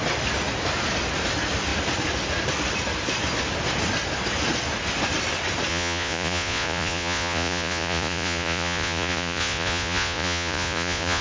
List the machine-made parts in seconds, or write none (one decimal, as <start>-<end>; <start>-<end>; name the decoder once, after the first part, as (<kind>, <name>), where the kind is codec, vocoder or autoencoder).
5.7-11.2 (vocoder, Vocos)

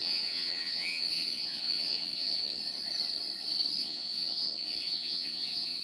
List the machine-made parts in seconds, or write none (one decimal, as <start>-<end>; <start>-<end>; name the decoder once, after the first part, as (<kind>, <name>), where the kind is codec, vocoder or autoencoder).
0.0-2.6 (vocoder, Vocos); 3.8-5.8

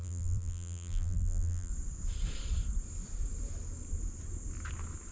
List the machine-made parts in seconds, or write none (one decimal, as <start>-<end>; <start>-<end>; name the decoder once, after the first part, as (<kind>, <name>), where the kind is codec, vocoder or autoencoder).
0.0-1.7 (vocoder, BigVGAN v2)